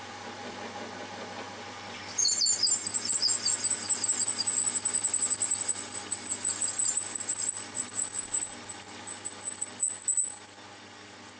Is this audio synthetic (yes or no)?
no